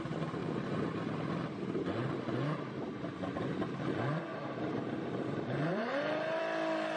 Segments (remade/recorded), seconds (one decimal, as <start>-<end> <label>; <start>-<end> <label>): 0.0-0.4 recorded; 0.4-1.4 remade; 1.4-4.3 recorded; 4.3-6.4 remade; 6.4-7.0 recorded